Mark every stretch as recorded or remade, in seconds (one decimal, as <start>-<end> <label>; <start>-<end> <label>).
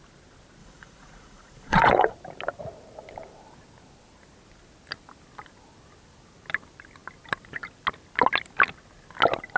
0.0-0.6 recorded; 0.6-2.1 remade; 2.1-9.6 recorded